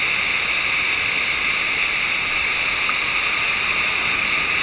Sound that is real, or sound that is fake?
real